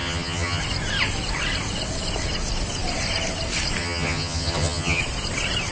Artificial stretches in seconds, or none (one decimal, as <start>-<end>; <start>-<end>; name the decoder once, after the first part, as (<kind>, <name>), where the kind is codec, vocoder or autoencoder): 0.0-0.6 (vocoder, HiFi-GAN); 3.8-5.0